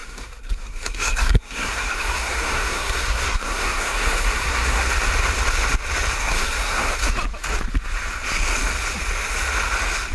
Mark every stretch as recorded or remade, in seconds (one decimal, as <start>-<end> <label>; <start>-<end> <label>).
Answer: 0.0-4.9 remade; 4.9-6.2 recorded; 6.2-6.9 remade; 6.9-10.1 recorded

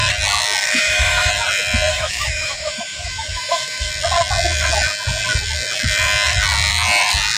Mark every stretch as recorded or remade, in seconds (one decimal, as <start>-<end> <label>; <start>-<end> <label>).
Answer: 0.0-0.6 recorded; 0.6-1.3 remade; 1.3-1.9 recorded; 1.9-3.9 remade; 3.9-7.4 recorded

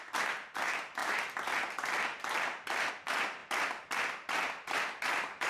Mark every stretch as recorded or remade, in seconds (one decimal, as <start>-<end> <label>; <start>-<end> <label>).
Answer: 0.0-5.5 recorded

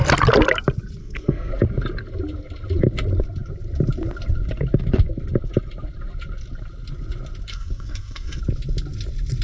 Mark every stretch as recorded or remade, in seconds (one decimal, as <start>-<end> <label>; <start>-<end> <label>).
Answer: 0.0-1.0 recorded; 1.0-1.5 remade; 1.5-7.5 recorded; 7.5-8.4 remade; 8.4-9.4 recorded